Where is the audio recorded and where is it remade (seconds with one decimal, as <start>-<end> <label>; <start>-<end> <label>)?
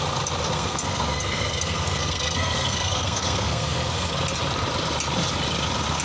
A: 0.0-0.5 recorded; 0.5-4.1 remade; 4.1-6.0 recorded